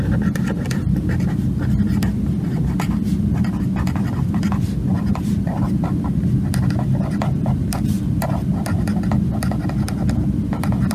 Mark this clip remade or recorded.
recorded